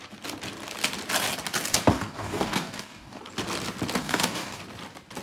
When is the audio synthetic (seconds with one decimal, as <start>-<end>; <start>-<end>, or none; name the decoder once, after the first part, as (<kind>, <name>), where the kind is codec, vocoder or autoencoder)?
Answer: 1.9-3.2 (codec, DAC); 4.0-4.6

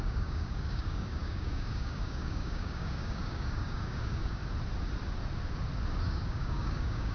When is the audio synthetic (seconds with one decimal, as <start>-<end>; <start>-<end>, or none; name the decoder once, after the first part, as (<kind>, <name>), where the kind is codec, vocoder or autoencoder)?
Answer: 0.0-4.4 (codec, DAC); 6.0-7.1

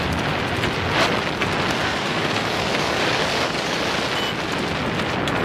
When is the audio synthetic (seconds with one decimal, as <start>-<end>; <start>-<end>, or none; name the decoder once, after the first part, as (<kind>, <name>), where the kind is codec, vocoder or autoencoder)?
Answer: 1.8-3.8 (codec, DAC)

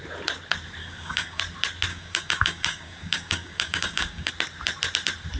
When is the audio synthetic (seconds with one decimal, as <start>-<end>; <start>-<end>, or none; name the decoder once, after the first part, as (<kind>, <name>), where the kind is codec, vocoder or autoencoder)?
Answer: 0.8-1.4 (codec, DAC); 1.9-4.3

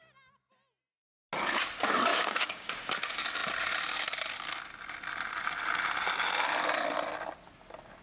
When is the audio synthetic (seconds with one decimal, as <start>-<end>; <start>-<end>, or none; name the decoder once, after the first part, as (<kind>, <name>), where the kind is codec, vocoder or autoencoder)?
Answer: 2.1-2.7 (codec, DAC)

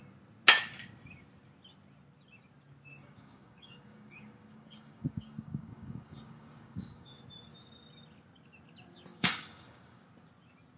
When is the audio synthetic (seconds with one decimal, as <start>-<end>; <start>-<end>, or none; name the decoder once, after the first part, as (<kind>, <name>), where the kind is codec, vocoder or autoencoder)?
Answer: 3.0-7.2 (codec, DAC); 9.1-10.0